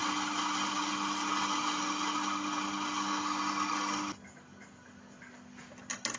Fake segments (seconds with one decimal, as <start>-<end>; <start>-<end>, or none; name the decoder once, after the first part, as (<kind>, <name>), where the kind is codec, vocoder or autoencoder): none

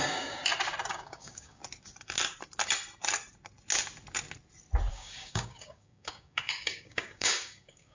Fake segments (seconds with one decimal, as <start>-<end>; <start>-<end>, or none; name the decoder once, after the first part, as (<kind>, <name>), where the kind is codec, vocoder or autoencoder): 0.0-0.4 (codec, DAC); 0.9-1.6; 4.9-7.9

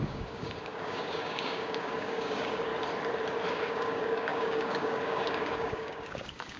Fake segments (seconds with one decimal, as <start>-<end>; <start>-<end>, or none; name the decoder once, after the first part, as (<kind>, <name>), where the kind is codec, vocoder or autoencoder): 0.0-2.7 (codec, DAC); 3.5-6.6

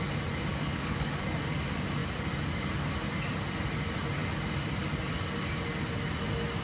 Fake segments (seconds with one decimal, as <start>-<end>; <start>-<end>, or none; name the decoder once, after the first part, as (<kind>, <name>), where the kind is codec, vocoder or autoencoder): 0.5-1.2 (codec, DAC)